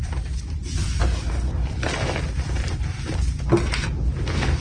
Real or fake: real